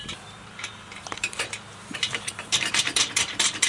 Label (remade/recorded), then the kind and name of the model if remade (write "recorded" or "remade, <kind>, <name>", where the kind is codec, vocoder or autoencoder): remade, vocoder, BigVGAN v2